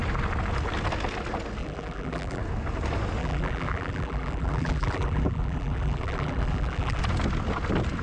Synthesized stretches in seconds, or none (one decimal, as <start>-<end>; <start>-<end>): 1.6-2.4; 3.2-7.0